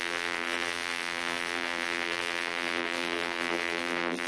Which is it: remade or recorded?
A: remade